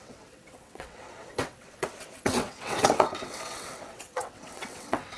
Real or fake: fake